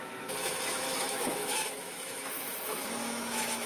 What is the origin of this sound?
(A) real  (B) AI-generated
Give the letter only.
B